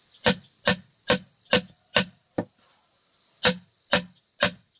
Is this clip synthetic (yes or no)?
no